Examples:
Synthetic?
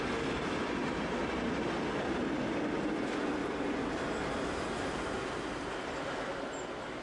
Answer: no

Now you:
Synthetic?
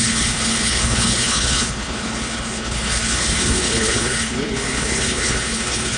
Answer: yes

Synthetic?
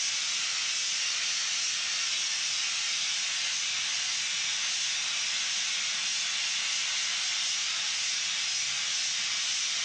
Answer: no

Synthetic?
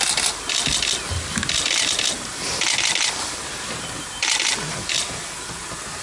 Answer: no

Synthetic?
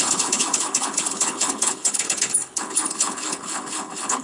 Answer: yes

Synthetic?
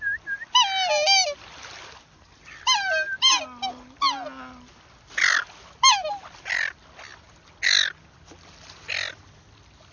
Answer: no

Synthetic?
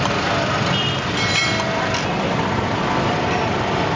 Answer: no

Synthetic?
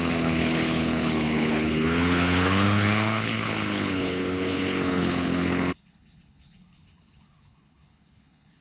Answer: yes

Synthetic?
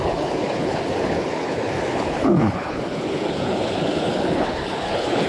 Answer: yes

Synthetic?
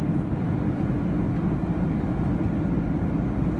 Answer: no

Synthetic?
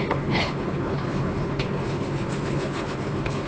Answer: yes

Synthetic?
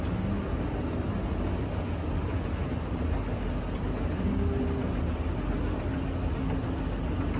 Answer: no